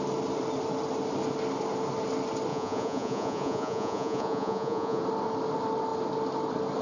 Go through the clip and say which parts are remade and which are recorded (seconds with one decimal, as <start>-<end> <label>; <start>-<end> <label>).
0.0-2.5 recorded; 2.5-5.0 remade; 5.0-6.8 recorded